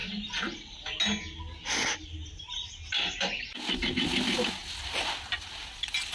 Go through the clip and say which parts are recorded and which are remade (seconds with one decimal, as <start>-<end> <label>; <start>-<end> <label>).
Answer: 0.0-6.1 recorded

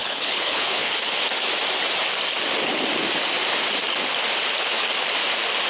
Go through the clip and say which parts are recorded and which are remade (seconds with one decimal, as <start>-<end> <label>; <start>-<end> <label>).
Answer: 0.0-1.0 remade; 1.0-5.7 recorded

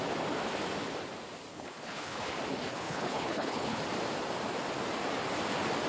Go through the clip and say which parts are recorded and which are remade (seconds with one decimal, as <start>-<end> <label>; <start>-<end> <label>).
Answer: 0.0-1.5 recorded; 1.5-2.3 remade; 2.3-2.7 recorded; 2.7-3.8 remade; 3.8-5.9 recorded

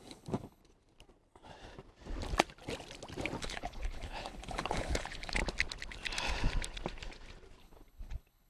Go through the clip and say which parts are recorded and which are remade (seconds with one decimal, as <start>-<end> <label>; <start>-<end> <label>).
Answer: 0.0-0.6 remade; 0.6-3.4 recorded; 3.4-5.4 remade; 5.4-7.6 recorded; 7.6-8.5 remade

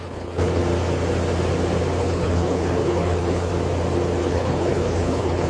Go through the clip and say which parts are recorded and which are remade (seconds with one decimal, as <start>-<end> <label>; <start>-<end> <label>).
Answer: 0.0-0.6 remade; 0.6-2.0 recorded; 2.0-3.5 remade; 3.5-4.2 recorded; 4.2-5.5 remade

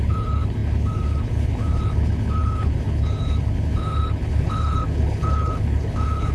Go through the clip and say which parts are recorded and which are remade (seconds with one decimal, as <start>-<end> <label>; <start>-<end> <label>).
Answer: 0.0-6.3 remade

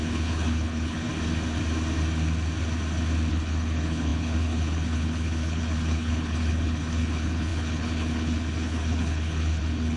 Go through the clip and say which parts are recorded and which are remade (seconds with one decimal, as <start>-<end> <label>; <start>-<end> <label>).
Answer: 0.0-1.1 remade; 1.1-3.3 recorded; 3.3-10.0 remade

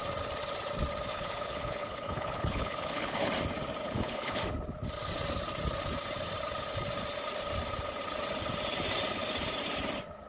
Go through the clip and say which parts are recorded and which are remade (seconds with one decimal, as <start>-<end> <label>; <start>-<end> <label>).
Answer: 0.0-1.1 recorded; 1.1-3.3 remade; 3.3-3.8 recorded; 3.8-4.4 remade; 4.4-10.3 recorded